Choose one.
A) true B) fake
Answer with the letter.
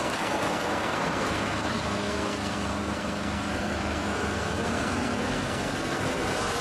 B